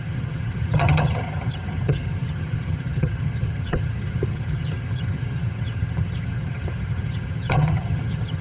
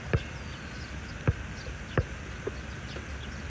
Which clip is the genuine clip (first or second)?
second